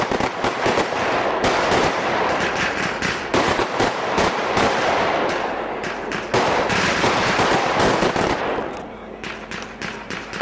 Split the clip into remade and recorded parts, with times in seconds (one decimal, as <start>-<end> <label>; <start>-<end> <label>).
0.0-3.3 recorded; 3.3-6.1 remade; 6.1-10.4 recorded